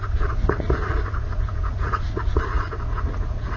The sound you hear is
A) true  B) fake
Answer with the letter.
B